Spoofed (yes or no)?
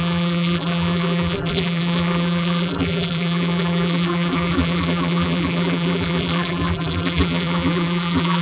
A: yes